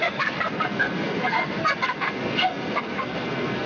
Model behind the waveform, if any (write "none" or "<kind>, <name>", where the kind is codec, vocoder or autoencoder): codec, SNAC